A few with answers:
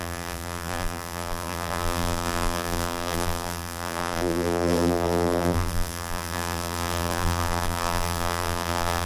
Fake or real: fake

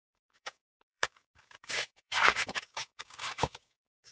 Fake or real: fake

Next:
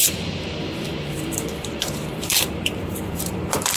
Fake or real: fake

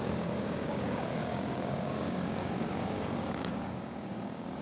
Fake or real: fake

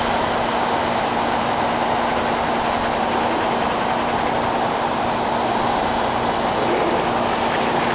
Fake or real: real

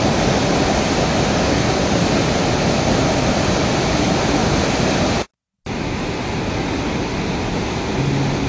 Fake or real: real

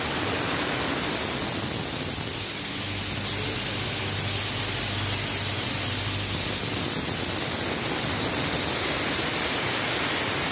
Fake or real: real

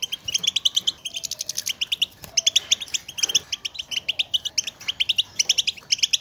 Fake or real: real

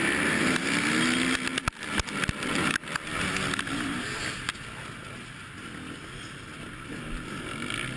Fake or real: real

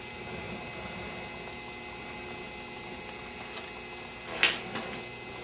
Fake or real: real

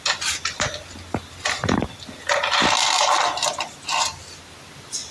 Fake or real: real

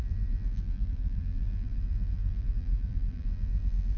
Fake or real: fake